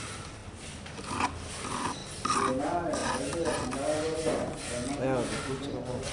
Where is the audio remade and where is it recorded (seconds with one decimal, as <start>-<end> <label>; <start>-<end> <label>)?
0.0-6.1 recorded